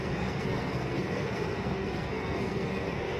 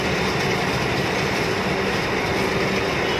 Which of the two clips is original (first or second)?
second